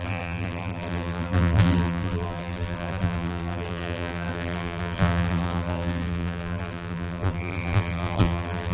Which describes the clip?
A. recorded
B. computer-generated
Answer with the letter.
B